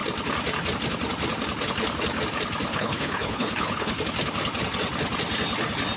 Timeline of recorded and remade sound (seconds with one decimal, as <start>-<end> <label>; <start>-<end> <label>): 0.0-2.7 recorded; 2.7-4.0 remade; 4.0-6.0 recorded